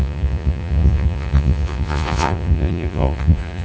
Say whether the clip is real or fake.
fake